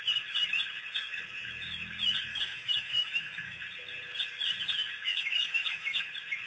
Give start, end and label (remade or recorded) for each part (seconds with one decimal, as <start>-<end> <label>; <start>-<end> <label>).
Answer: 0.0-2.3 recorded; 2.3-3.6 remade; 3.6-5.1 recorded; 5.1-6.1 remade; 6.1-6.5 recorded